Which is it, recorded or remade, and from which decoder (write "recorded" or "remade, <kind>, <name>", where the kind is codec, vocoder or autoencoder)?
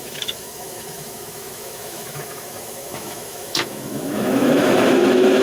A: remade, autoencoder, DAC-VAE